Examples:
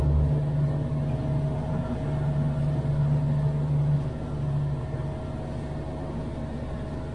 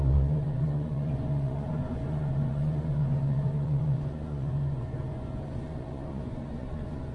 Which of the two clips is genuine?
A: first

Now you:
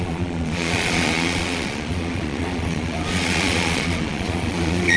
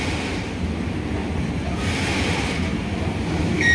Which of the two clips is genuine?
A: second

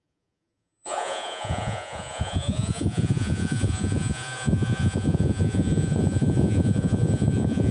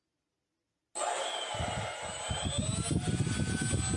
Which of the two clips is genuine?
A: second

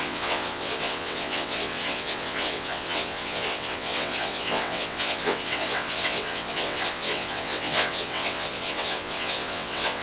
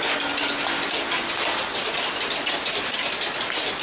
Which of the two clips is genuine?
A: second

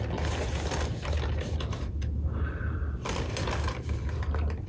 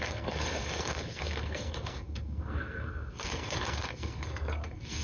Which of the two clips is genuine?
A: first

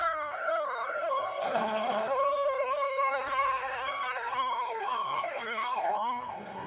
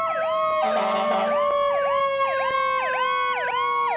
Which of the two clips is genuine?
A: second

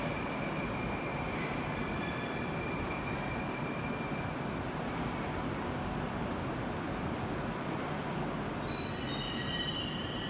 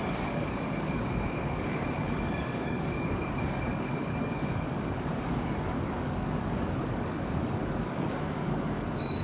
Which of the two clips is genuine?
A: first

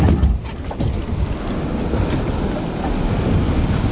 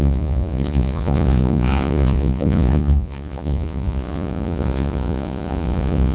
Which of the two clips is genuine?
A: first